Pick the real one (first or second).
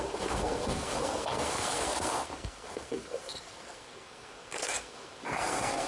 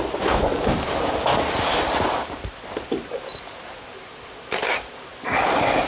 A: second